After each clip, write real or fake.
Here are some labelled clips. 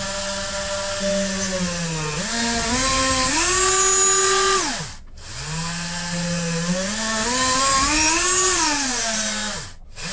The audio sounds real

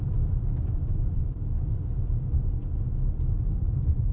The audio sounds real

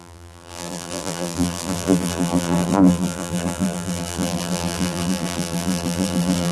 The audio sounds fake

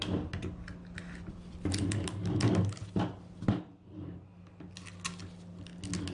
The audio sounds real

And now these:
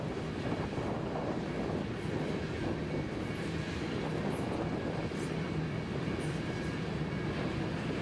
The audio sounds real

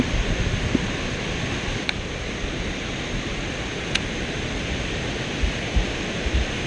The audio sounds fake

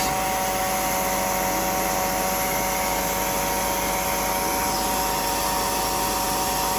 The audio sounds real